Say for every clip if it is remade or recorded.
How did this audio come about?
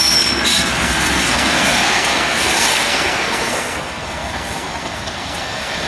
remade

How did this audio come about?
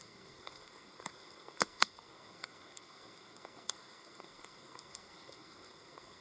remade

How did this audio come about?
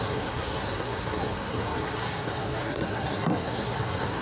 remade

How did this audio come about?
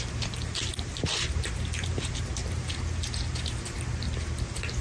recorded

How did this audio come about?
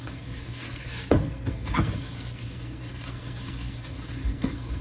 remade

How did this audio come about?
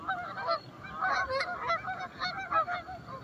recorded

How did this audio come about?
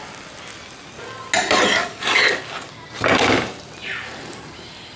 recorded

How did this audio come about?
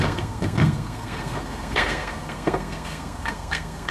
remade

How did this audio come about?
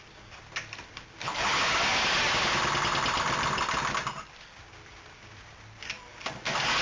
recorded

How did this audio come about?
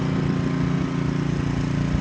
recorded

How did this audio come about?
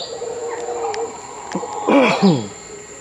recorded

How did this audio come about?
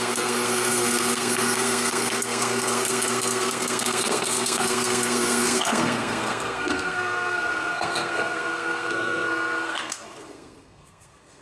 remade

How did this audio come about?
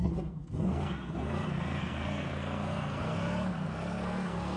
remade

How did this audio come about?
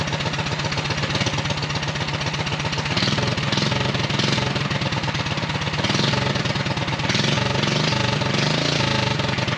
recorded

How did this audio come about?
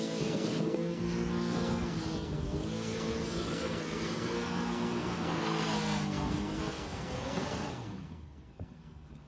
remade